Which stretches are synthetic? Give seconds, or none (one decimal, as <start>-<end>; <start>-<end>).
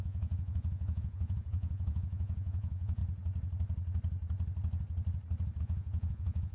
0.0-3.0; 5.6-6.5